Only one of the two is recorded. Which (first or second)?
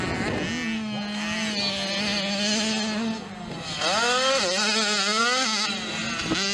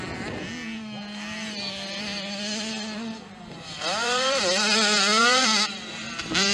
first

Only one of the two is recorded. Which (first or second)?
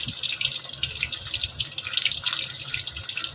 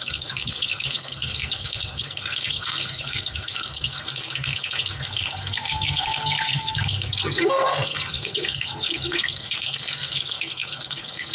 first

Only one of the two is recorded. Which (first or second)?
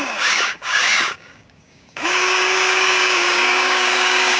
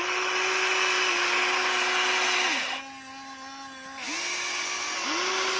second